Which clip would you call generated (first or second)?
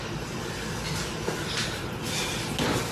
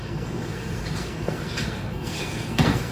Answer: second